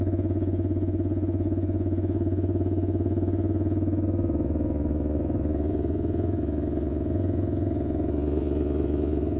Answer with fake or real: fake